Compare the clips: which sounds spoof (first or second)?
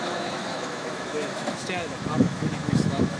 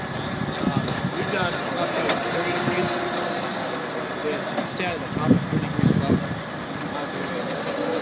first